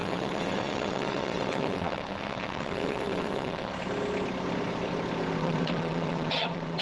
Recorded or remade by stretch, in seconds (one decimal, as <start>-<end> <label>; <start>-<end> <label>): 0.0-3.7 remade; 3.7-5.4 recorded; 5.4-6.8 remade